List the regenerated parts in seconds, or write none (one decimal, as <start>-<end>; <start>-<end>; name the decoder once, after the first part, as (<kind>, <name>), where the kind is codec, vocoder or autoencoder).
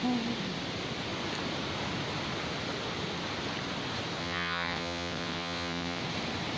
4.2-6.0 (vocoder, WaveNeXt)